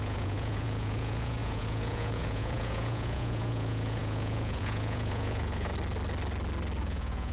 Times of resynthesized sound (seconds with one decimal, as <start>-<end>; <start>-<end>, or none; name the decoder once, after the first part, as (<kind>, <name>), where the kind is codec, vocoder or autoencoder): 0.0-5.7 (vocoder, Vocos); 6.8-7.3